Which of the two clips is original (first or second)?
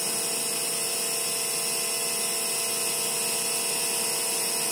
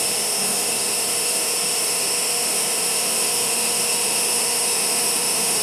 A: first